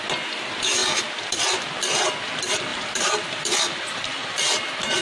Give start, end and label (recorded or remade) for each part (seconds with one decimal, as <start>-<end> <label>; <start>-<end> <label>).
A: 0.0-0.8 recorded; 0.8-1.4 remade; 1.4-2.7 recorded; 2.7-4.4 remade; 4.4-5.0 recorded